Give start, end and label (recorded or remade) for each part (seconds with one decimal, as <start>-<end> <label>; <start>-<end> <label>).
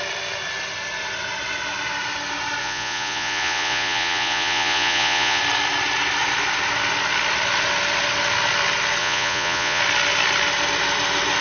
0.0-2.6 recorded; 2.6-5.4 remade; 5.4-9.0 recorded; 9.0-9.8 remade; 9.8-11.4 recorded